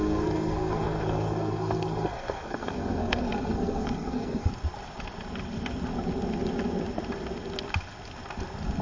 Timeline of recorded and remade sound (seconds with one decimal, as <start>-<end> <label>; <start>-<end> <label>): 0.0-4.5 remade; 4.5-8.8 recorded